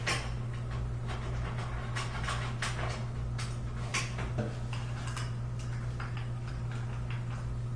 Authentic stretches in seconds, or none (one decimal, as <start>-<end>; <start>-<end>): 0.0-7.8